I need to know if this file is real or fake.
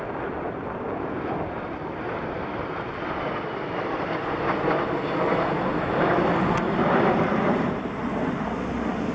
real